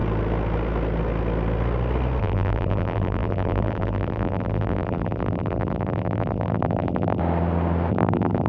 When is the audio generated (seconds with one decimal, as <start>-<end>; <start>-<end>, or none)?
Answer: 2.2-7.2; 7.9-8.5